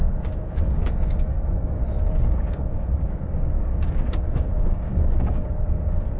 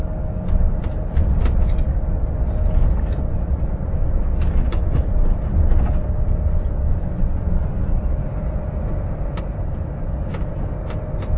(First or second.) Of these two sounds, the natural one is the second